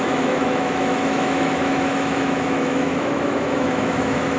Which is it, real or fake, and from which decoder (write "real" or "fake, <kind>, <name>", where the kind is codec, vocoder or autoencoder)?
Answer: fake, autoencoder, DAC-VAE